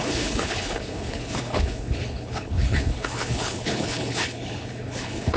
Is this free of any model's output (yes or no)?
no